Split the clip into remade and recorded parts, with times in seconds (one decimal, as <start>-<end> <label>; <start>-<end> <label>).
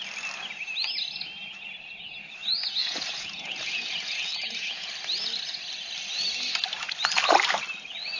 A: 0.0-2.8 recorded; 2.8-4.9 remade; 4.9-8.2 recorded